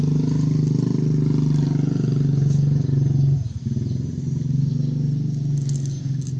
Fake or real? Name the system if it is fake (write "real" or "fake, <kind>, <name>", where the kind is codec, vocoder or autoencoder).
real